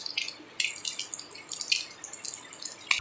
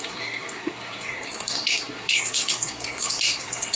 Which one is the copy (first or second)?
second